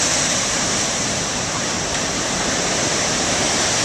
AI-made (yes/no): yes